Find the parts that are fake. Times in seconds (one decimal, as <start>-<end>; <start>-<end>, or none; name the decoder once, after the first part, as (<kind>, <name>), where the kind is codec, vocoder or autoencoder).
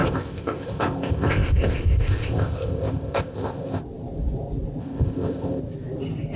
0.0-3.8 (codec, ZipCodec); 4.8-5.6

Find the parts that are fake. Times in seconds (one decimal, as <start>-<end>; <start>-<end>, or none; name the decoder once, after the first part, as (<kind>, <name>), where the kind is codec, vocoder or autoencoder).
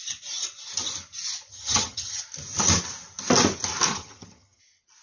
1.5-2.2 (vocoder, HiFi-GAN); 3.9-4.6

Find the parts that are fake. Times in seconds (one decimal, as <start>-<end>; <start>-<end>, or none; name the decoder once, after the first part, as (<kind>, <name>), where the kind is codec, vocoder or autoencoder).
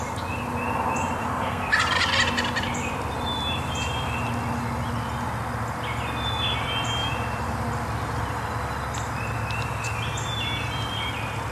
1.2-1.7 (codec, SNAC)